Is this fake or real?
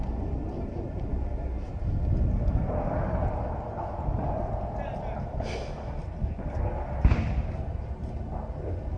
real